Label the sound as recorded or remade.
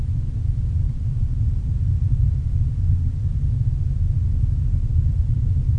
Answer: recorded